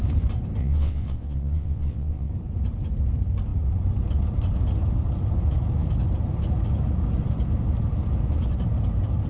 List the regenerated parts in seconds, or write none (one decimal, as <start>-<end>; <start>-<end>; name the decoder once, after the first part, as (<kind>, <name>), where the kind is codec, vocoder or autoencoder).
0.6-2.3 (vocoder, WaveNeXt)

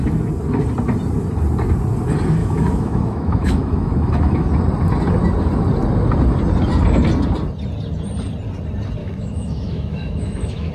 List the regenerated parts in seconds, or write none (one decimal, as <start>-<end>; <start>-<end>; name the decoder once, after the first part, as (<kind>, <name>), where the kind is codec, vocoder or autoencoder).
2.4-4.5 (autoencoder, DAC-VAE); 9.0-10.7

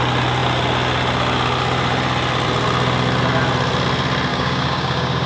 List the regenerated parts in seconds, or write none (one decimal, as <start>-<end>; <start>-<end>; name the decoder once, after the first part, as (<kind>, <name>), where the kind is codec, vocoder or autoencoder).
4.3-5.3 (codec, DAC)

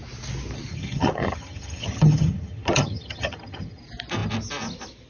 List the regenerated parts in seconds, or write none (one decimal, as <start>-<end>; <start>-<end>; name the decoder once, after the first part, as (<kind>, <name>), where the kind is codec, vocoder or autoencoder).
0.7-3.8 (vocoder, HiFi-GAN)

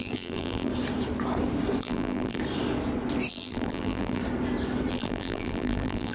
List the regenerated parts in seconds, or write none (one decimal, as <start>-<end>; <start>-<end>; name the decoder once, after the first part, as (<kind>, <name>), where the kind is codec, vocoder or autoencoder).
0.0-0.7 (vocoder, BigVGAN v2); 1.8-2.4; 3.3-4.2; 4.9-6.1

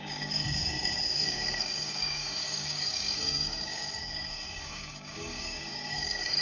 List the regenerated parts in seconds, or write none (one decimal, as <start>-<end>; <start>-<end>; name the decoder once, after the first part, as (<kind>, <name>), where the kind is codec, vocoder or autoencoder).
0.0-6.4 (codec, DAC)

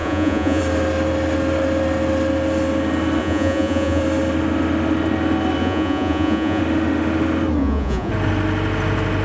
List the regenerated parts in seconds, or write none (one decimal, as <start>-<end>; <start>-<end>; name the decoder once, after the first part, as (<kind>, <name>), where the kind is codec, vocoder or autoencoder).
0.0-0.6 (vocoder, Vocos); 3.2-4.0; 5.6-6.6; 7.6-8.1

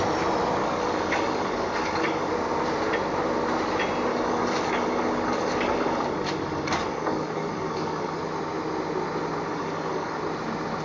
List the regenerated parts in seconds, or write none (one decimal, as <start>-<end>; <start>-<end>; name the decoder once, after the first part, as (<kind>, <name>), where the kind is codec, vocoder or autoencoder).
0.6-2.3 (codec, DAC); 4.1-8.2; 9.5-10.2